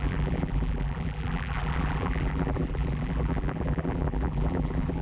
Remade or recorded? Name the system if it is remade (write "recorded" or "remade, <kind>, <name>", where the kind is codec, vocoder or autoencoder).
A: remade, vocoder, BigVGAN v2